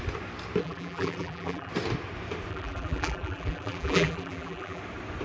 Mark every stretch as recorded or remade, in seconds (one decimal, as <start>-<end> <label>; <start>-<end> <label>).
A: 0.0-0.6 recorded; 0.6-1.7 remade; 1.7-2.5 recorded; 2.5-4.8 remade; 4.8-5.2 recorded